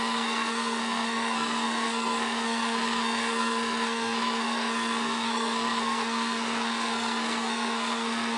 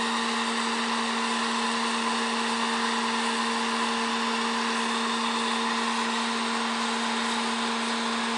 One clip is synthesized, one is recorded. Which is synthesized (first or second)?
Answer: first